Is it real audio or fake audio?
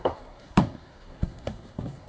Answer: fake